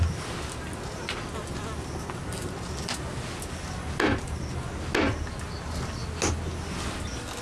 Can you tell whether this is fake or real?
real